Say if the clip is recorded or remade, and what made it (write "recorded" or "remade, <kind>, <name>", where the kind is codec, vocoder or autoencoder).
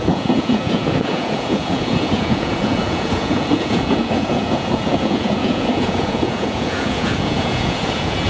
remade, vocoder, Vocos